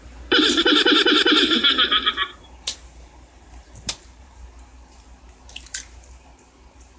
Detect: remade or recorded remade